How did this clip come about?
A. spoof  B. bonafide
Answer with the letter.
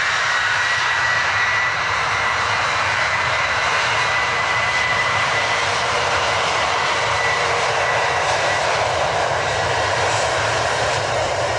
A